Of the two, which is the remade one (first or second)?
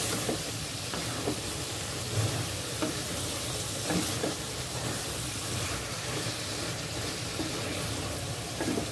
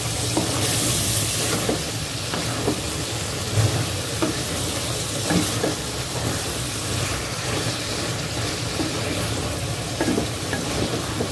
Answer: first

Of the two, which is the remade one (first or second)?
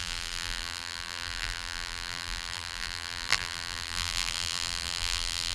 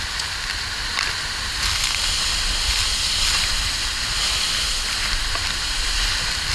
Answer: first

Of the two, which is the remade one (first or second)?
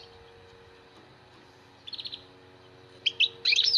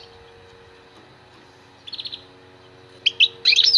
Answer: first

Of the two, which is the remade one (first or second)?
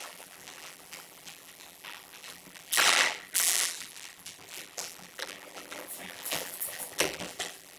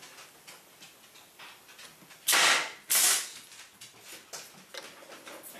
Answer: first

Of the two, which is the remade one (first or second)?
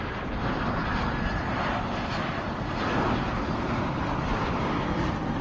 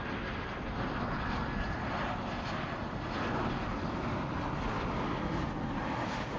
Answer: first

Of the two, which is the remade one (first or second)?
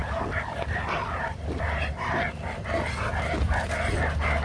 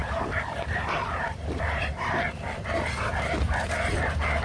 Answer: second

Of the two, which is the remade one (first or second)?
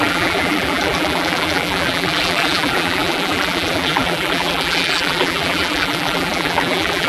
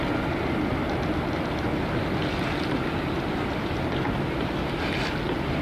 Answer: first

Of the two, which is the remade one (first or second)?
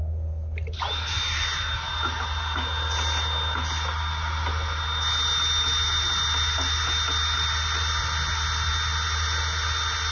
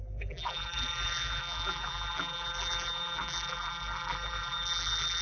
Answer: second